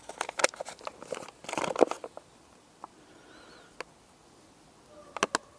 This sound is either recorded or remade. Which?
recorded